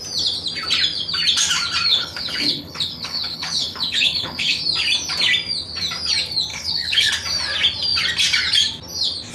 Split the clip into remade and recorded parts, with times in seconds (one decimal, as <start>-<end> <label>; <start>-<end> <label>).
0.0-1.9 recorded; 1.9-4.6 remade; 4.6-6.5 recorded; 6.5-7.1 remade; 7.1-9.3 recorded